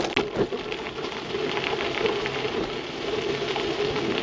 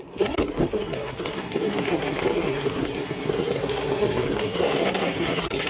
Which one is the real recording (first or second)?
first